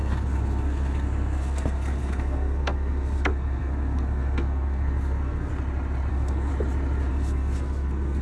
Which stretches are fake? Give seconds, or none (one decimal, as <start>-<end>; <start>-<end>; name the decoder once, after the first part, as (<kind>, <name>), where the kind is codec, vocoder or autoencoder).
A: 0.0-5.5 (codec, SNAC); 6.1-6.5; 7.1-8.2